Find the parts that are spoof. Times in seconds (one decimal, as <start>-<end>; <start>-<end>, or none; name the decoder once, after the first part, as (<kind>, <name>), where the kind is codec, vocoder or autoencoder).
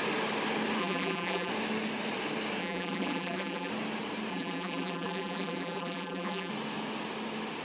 0.8-1.5 (vocoder, BigVGAN v2); 2.6-3.7; 4.3-6.5